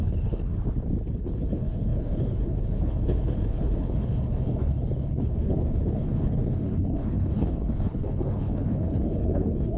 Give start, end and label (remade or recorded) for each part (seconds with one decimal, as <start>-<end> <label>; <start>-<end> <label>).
0.0-0.5 remade; 0.5-1.2 recorded; 1.2-9.8 remade

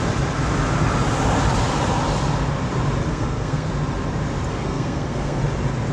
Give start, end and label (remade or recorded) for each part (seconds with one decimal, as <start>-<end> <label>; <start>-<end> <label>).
0.0-3.1 recorded; 3.1-3.7 remade; 3.7-4.5 recorded; 4.5-5.4 remade; 5.4-5.9 recorded

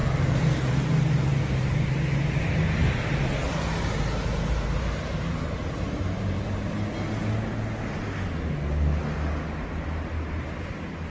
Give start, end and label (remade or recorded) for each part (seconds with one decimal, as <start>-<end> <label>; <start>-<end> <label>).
0.0-1.3 recorded; 1.3-6.6 remade; 6.6-11.1 recorded

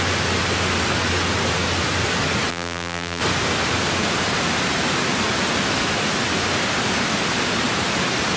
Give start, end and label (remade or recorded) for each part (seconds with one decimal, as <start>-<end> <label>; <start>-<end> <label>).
0.0-2.5 recorded; 2.5-3.2 remade; 3.2-8.4 recorded